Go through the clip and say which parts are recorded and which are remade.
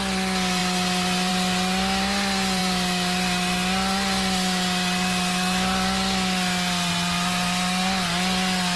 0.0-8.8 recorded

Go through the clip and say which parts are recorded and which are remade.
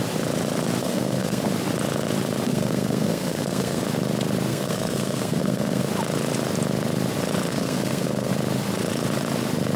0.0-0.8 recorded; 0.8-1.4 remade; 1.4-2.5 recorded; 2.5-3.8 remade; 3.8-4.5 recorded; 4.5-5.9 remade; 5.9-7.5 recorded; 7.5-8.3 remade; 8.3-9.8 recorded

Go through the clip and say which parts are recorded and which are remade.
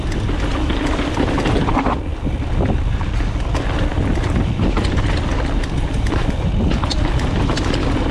0.0-3.9 recorded; 3.9-6.9 remade; 6.9-8.1 recorded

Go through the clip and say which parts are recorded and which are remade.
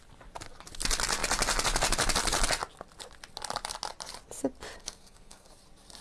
0.0-4.8 recorded; 4.8-5.5 remade; 5.5-6.0 recorded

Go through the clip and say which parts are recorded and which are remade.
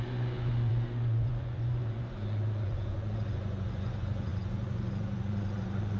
0.0-6.0 remade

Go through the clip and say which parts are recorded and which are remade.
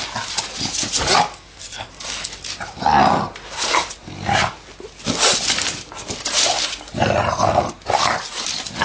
0.0-1.3 recorded; 1.3-2.3 remade; 2.3-8.8 recorded